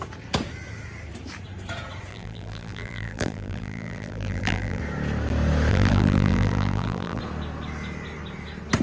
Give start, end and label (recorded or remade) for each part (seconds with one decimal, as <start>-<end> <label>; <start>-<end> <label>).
0.0-2.1 recorded; 2.1-4.8 remade; 4.8-5.7 recorded; 5.7-7.2 remade; 7.2-8.8 recorded